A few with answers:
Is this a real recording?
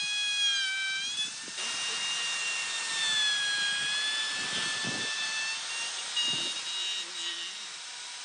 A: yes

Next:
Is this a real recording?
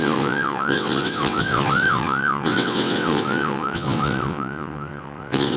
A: no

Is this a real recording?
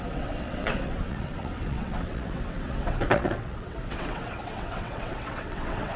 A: no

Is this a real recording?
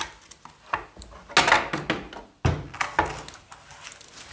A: yes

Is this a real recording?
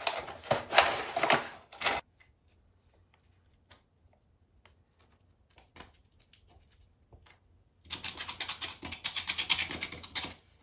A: yes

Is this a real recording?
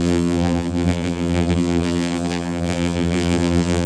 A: no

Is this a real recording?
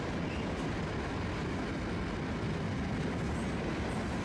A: yes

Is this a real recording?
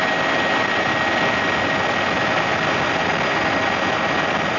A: yes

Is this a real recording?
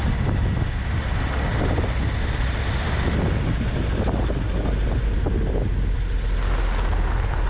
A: yes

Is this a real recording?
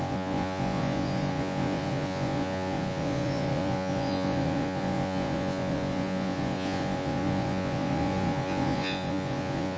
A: no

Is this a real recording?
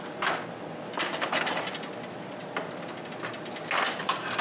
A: yes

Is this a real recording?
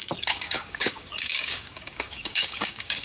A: no